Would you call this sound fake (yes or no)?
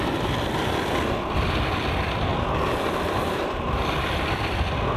no